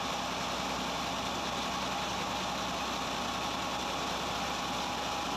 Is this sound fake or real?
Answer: real